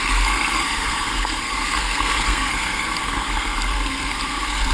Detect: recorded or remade remade